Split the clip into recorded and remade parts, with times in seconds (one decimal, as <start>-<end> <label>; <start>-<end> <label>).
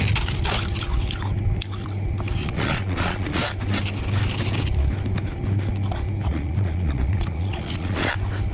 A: 0.0-2.4 recorded; 2.4-3.4 remade; 3.4-6.3 recorded; 6.3-8.1 remade; 8.1-8.5 recorded